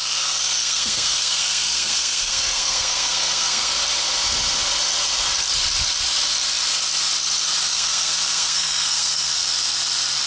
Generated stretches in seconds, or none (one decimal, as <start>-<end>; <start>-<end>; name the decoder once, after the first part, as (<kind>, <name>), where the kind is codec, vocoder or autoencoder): 0.0-3.7 (codec, SNAC); 7.7-9.3